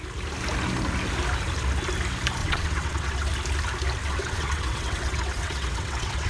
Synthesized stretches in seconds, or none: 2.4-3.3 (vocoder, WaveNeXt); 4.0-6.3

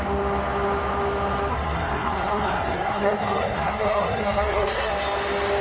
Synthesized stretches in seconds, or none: 1.5-4.9 (codec, SNAC)

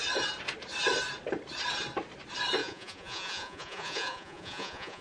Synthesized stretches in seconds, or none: 2.6-5.0 (vocoder, Vocos)

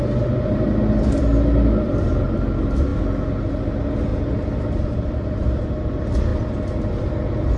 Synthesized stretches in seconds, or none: none

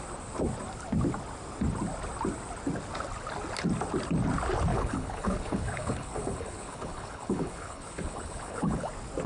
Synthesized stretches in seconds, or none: 4.7-8.9 (codec, HILCodec)

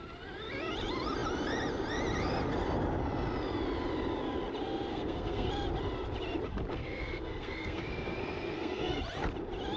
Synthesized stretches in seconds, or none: 4.9-5.5 (codec, SNAC); 6.7-9.0

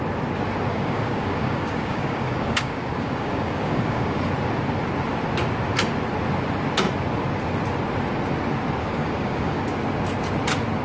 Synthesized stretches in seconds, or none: 0.7-4.2 (codec, DAC); 8.8-9.6